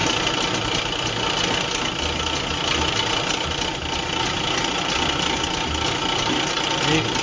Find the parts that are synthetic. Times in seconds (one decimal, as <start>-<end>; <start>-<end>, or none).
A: none